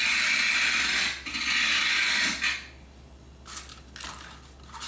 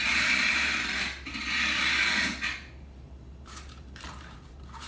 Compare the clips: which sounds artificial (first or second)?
second